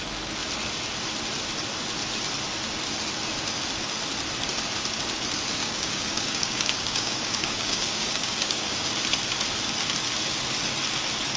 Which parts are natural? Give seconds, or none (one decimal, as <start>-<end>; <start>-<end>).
0.0-5.6; 8.9-11.4